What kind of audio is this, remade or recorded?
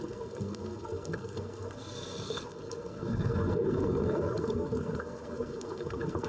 remade